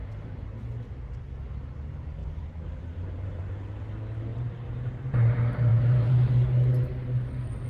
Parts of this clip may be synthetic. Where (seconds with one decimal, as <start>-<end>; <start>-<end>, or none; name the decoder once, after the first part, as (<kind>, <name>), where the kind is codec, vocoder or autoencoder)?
0.0-0.5 (vocoder, BigVGAN v2); 2.2-3.4; 4.3-5.0; 5.7-6.3